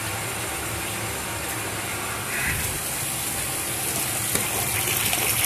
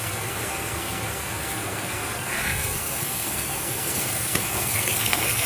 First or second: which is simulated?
second